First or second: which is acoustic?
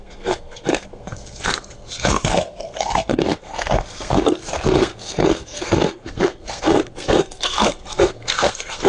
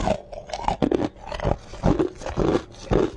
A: second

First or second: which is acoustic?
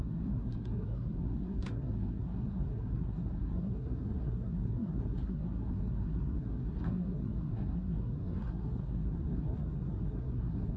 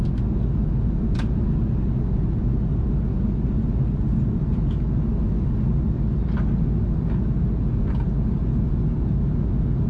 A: second